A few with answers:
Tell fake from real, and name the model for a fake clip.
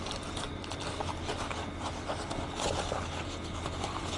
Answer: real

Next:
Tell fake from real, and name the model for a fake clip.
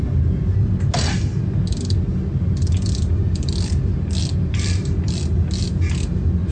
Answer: real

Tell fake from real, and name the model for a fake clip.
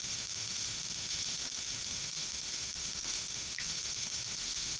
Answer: fake, autoencoder, DAC-VAE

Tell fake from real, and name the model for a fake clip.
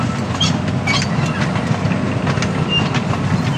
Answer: real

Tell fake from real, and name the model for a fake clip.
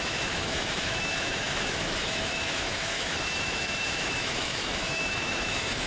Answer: fake, autoencoder, DAC-VAE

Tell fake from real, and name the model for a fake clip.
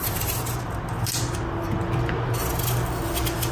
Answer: real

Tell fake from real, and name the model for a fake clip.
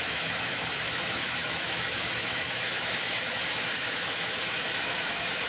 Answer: fake, autoencoder, DAC-VAE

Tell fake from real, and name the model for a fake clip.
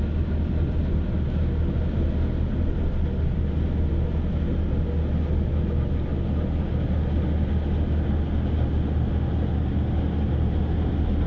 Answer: real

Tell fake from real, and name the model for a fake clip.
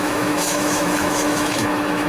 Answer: fake, autoencoder, DAC-VAE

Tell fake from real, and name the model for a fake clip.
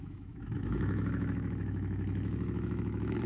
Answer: fake, autoencoder, DAC-VAE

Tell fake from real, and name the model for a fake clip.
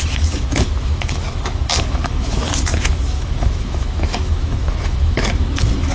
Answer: fake, autoencoder, DAC-VAE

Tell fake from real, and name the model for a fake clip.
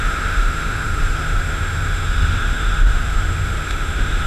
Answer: fake, autoencoder, DAC-VAE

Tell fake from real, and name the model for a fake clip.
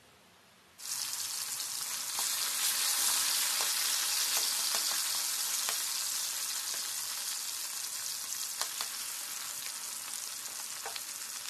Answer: real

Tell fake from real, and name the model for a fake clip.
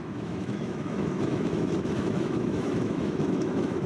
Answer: fake, autoencoder, DAC-VAE